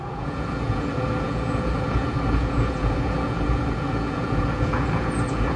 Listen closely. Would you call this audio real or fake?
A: fake